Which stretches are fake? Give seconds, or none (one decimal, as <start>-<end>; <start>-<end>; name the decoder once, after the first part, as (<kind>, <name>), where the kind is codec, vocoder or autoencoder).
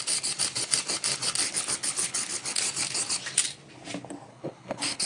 1.4-2.6 (codec, HILCodec); 4.3-5.1